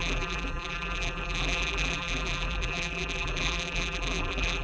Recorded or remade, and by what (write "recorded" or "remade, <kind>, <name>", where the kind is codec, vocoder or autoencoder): remade, vocoder, BigVGAN v2